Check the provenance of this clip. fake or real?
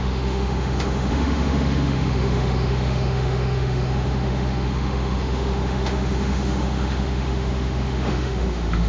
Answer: fake